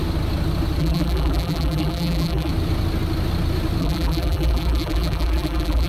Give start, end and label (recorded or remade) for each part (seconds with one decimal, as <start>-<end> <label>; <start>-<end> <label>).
0.0-0.8 recorded; 0.8-2.5 remade; 2.5-3.8 recorded; 3.8-5.9 remade